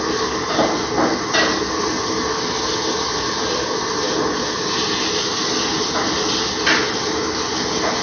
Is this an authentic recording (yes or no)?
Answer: yes